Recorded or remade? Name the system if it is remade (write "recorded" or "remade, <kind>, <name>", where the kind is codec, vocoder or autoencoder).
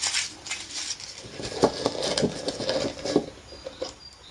recorded